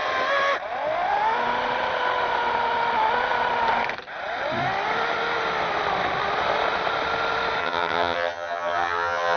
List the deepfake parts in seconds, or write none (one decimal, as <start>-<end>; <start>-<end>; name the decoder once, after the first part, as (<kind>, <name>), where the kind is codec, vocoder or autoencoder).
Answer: 7.6-9.4 (vocoder, HiFi-GAN)